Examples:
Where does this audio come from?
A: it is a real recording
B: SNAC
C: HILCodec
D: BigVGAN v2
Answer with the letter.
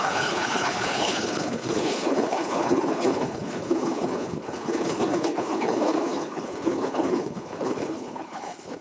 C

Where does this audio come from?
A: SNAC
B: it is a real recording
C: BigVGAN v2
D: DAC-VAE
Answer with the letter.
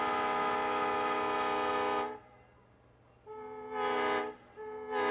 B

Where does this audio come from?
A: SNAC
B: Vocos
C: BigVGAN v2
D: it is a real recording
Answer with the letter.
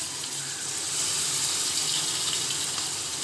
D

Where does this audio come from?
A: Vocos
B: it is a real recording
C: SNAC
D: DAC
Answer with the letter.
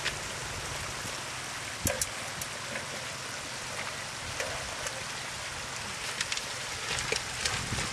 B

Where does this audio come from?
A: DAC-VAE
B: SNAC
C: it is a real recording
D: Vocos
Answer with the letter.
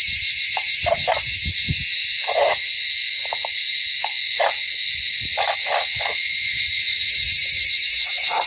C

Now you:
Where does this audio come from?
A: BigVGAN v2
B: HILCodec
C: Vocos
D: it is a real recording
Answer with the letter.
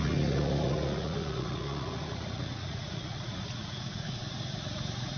C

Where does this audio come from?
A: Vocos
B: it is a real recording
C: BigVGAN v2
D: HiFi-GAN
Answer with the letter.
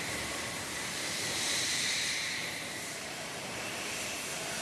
C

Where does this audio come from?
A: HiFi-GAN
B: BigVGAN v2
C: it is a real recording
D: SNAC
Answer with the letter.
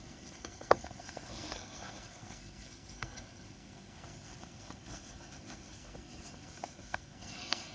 D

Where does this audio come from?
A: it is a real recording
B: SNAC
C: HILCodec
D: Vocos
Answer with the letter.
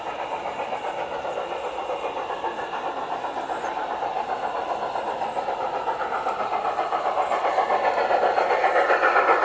A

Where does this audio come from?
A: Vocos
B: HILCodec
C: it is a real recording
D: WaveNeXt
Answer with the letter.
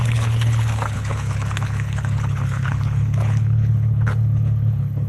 B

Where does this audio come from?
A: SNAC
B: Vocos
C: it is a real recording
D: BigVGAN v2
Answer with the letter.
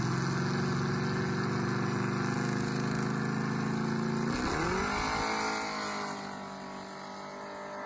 C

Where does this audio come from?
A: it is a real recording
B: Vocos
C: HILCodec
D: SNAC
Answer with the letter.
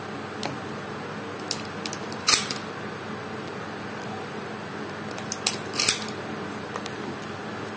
A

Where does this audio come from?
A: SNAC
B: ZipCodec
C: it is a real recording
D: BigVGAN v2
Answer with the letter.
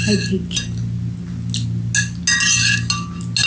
C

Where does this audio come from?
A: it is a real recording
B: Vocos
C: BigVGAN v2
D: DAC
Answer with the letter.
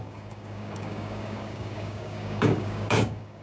D